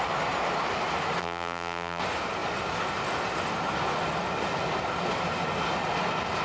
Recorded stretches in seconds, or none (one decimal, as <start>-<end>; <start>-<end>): 0.0-1.2; 2.0-6.4